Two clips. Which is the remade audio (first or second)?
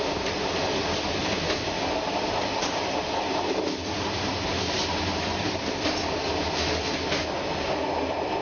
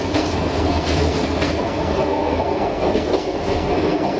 second